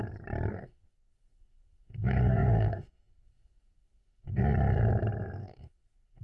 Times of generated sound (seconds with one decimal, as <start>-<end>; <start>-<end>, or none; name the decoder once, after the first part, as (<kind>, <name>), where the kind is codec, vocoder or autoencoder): 0.5-4.4 (codec, DAC); 5.4-6.2